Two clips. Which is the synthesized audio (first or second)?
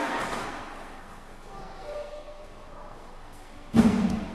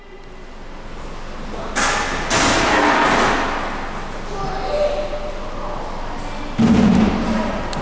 first